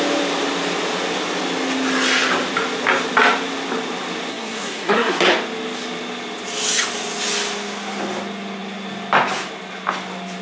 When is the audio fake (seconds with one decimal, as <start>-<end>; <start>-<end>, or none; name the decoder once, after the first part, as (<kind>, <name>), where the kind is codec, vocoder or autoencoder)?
4.3-5.3 (codec, SNAC)